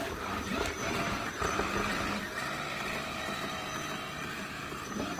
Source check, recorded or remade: remade